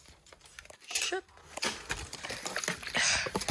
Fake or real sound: real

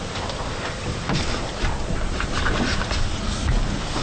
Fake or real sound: real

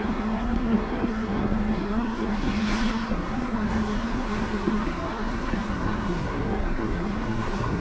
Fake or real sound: fake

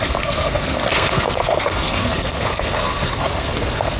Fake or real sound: fake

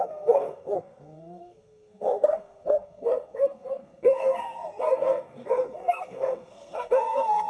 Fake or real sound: fake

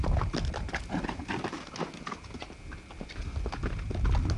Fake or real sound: real